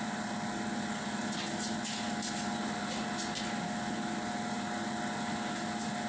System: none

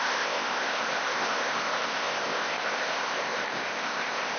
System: codec, ZipCodec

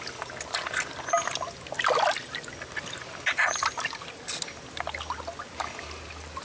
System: none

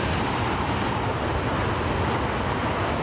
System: none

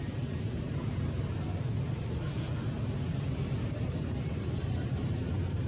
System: none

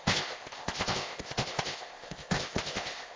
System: codec, ZipCodec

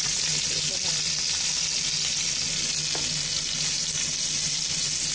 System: none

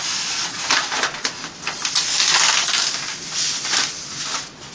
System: none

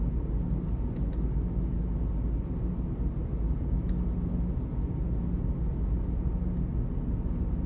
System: none